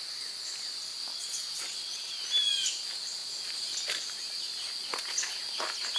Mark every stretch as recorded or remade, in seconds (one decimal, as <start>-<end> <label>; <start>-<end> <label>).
0.0-1.1 recorded; 1.1-2.2 remade; 2.2-6.0 recorded